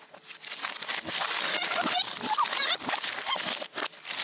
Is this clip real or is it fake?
real